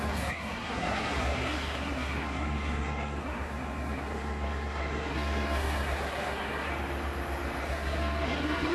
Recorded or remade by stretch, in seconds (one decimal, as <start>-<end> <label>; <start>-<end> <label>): 0.0-6.7 remade; 6.7-7.7 recorded; 7.7-8.7 remade